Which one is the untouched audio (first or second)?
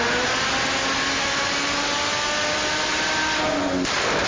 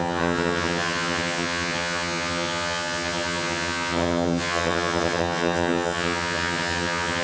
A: first